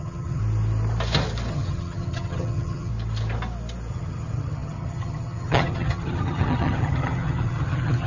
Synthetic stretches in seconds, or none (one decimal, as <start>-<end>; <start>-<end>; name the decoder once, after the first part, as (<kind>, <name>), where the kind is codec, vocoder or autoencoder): 0.0-0.4 (vocoder, HiFi-GAN); 1.5-2.9; 3.9-8.1